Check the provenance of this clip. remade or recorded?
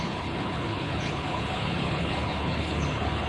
remade